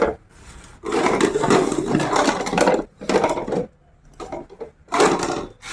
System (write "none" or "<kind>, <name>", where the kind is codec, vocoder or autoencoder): none